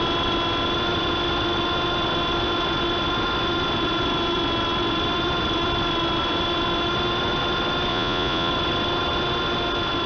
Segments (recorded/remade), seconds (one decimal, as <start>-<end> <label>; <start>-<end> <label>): 0.0-7.9 recorded; 7.9-8.5 remade; 8.5-10.1 recorded